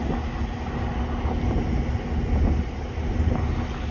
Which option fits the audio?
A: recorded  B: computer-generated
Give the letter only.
A